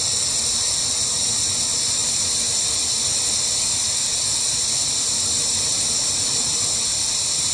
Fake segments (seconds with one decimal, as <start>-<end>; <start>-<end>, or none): none